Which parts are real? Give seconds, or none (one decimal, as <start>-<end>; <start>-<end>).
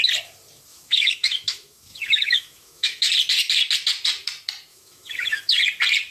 0.0-0.7; 3.1-4.7; 5.6-6.1